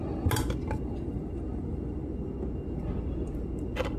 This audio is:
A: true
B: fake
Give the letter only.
A